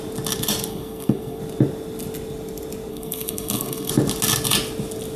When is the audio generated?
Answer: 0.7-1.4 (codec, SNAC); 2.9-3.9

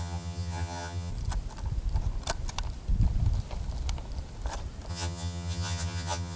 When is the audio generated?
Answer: 0.0-1.1 (vocoder, HiFi-GAN); 4.9-6.4

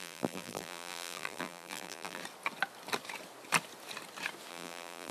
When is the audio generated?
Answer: 0.0-2.2 (vocoder, BigVGAN v2); 4.5-5.1

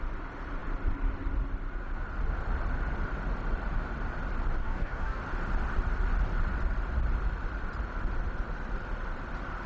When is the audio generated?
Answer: 4.6-5.2 (codec, DAC)

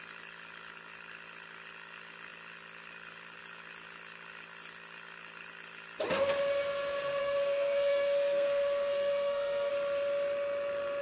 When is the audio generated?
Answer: 7.2-9.7 (codec, SNAC)

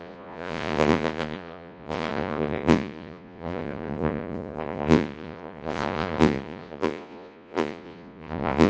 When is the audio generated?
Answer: 0.0-8.7 (vocoder, Vocos)